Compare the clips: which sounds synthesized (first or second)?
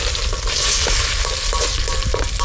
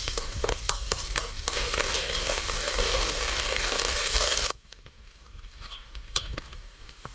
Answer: second